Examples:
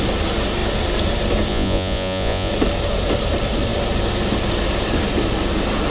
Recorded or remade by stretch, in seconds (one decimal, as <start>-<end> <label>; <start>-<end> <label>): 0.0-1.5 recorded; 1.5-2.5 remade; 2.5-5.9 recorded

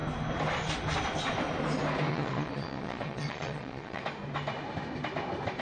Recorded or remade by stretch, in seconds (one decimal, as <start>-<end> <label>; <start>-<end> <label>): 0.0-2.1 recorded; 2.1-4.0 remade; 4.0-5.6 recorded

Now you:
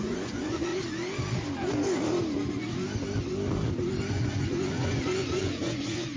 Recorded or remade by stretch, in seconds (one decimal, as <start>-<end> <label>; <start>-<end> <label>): 0.0-0.7 remade; 0.7-4.1 recorded; 4.1-6.2 remade

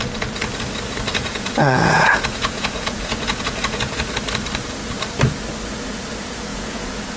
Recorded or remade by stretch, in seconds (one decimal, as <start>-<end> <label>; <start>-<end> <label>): 0.0-1.1 recorded; 1.1-4.2 remade; 4.2-6.5 recorded; 6.5-7.2 remade

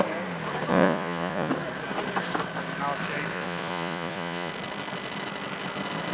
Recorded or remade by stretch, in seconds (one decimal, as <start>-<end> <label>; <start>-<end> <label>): 0.0-0.7 recorded; 0.7-1.5 remade; 1.5-3.3 recorded; 3.3-4.5 remade; 4.5-6.1 recorded

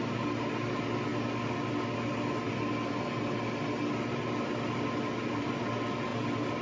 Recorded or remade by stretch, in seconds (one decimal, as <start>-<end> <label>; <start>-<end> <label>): 0.0-6.6 recorded

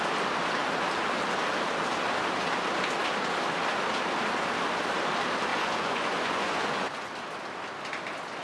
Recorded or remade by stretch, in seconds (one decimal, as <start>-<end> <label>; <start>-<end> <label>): 0.0-5.5 recorded; 5.5-7.1 remade; 7.1-8.4 recorded